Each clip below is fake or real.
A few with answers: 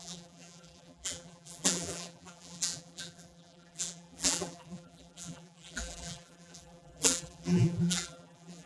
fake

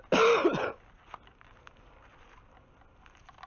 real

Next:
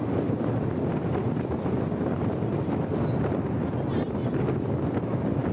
real